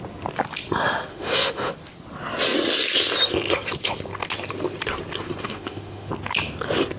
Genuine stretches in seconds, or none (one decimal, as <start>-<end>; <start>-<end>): 0.0-1.1; 1.7-5.4; 6.1-7.0

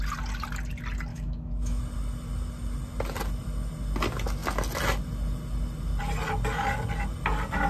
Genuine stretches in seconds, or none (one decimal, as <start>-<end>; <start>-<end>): 0.0-1.1; 1.8-7.7

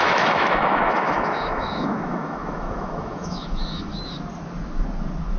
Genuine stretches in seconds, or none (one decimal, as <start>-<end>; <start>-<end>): 3.9-5.4

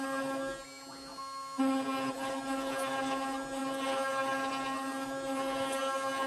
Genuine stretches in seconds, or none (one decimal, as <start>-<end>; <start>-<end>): 0.0-6.3

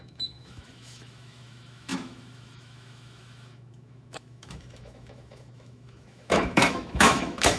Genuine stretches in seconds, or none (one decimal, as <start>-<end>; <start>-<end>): none